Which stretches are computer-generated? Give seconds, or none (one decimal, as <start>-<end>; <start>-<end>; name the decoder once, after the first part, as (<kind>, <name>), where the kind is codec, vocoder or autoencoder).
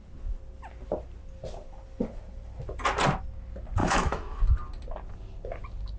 3.8-4.4 (autoencoder, DAC-VAE)